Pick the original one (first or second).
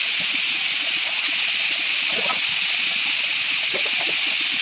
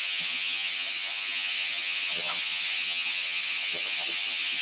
first